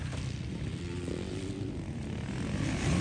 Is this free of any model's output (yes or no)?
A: yes